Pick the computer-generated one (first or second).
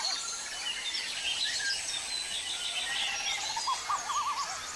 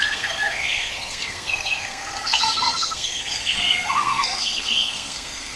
second